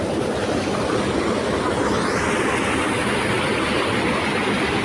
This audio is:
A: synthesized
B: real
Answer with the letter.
B